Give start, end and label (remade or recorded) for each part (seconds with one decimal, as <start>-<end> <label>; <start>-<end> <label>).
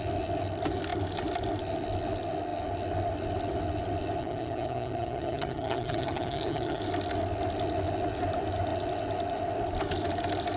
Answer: 0.0-4.2 recorded; 4.2-6.8 remade; 6.8-10.6 recorded